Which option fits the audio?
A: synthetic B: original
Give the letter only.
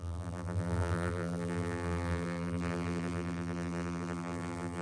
A